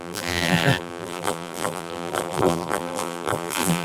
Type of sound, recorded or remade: remade